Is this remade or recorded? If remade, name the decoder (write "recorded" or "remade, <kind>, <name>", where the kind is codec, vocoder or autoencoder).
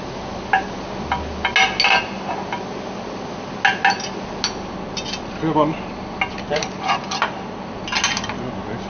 recorded